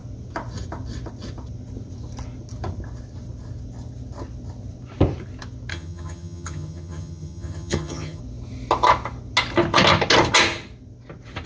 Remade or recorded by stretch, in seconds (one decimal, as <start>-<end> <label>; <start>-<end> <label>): 0.0-5.7 recorded; 5.7-8.2 remade; 8.2-11.5 recorded